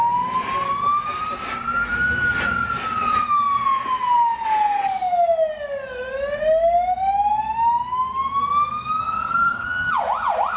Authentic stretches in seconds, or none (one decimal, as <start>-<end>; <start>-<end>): 0.0-9.0; 9.9-10.6